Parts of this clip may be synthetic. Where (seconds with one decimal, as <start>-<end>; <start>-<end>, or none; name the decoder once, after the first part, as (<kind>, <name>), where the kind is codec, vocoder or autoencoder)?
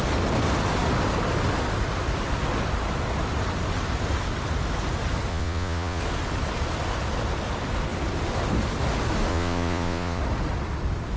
5.3-6.0 (vocoder, Vocos); 9.3-10.2